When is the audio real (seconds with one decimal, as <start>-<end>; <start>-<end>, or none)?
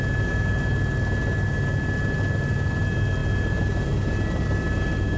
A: 0.0-5.2